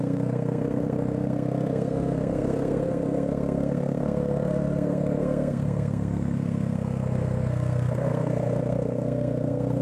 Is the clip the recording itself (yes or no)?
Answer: no